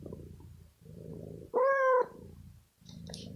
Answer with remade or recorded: remade